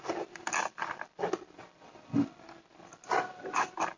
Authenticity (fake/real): fake